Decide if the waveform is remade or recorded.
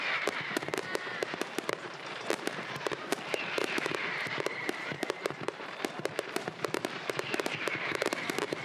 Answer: remade